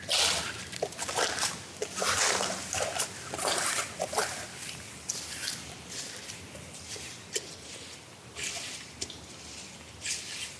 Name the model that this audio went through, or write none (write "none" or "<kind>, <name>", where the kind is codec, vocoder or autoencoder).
none